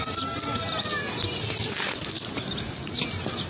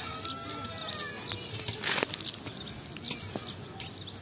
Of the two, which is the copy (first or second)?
first